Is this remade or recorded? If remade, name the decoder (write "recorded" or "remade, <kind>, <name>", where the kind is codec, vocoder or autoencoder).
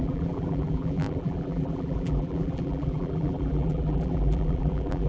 remade, vocoder, BigVGAN v2